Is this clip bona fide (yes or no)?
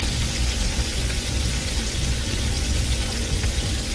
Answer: no